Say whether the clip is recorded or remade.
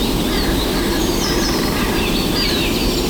recorded